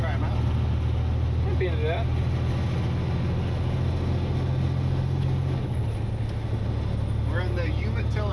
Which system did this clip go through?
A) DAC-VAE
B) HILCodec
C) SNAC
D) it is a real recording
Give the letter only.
D